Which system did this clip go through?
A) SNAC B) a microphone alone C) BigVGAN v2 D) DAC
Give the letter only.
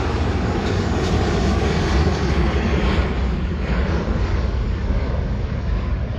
D